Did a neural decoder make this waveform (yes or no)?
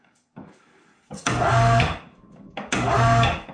yes